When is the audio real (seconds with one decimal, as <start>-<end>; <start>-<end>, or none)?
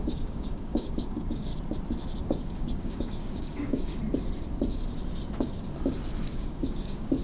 1.5-2.2; 3.9-6.3